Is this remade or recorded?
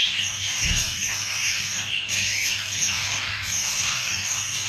remade